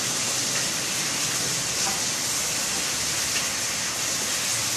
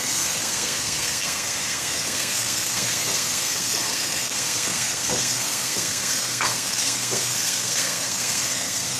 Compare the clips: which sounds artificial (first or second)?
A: second